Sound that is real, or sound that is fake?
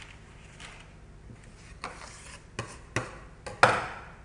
real